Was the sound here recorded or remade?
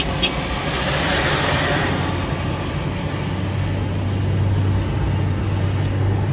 recorded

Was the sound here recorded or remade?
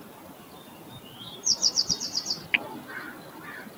recorded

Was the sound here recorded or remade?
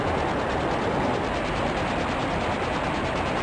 recorded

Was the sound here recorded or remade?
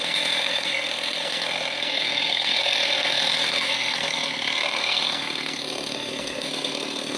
remade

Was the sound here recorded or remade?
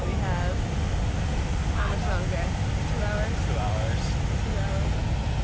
recorded